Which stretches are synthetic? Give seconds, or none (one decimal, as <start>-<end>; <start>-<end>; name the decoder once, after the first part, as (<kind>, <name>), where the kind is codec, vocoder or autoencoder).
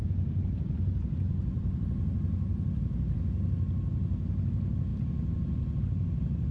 none